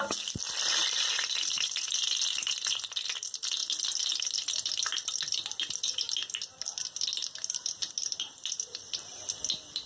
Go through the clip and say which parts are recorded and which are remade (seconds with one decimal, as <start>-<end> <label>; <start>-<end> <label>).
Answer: 0.0-9.9 recorded